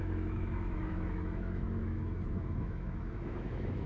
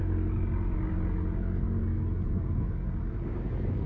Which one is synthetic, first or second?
first